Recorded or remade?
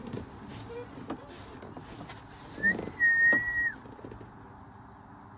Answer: recorded